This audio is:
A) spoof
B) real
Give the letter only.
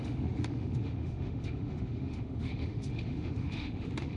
A